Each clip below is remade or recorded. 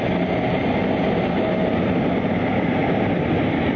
recorded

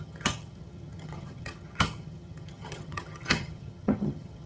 remade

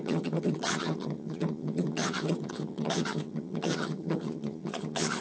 remade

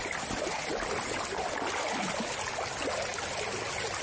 recorded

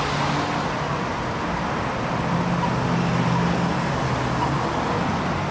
recorded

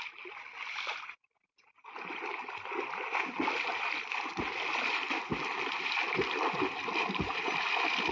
recorded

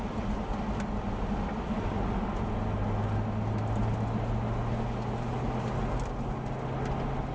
recorded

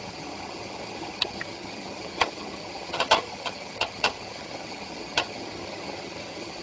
remade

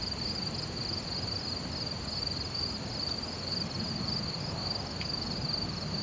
recorded